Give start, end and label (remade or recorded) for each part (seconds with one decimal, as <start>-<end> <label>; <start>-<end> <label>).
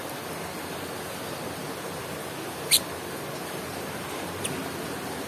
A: 0.0-5.3 recorded